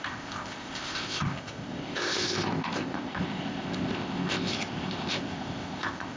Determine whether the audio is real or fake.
fake